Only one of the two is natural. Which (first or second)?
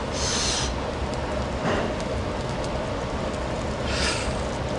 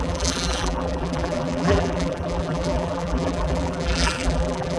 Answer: first